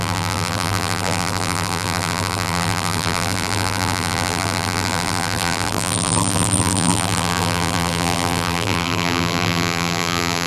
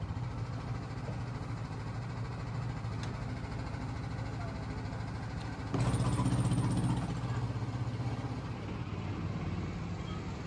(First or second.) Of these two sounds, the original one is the second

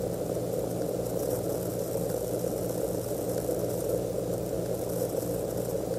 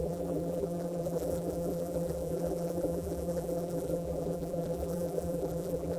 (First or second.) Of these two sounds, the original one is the first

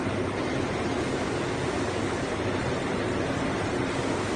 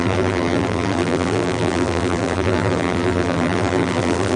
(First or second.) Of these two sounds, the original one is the first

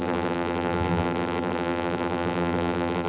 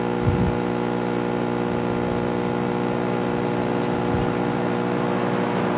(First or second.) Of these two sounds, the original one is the second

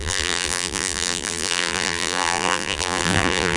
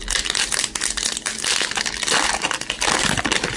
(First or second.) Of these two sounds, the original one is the second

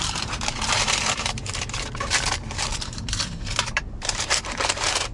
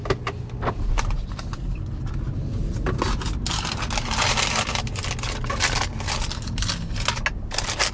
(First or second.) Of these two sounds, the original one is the second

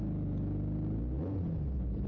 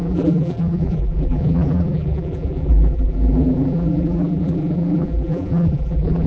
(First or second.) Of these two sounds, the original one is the first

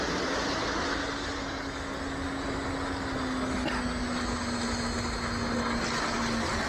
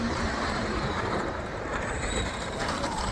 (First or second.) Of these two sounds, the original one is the first